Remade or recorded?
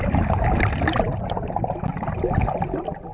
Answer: recorded